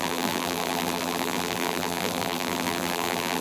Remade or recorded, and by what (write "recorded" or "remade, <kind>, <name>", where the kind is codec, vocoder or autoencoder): remade, vocoder, BigVGAN v2